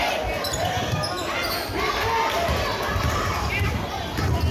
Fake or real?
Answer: real